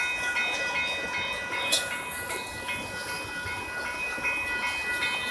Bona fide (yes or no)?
yes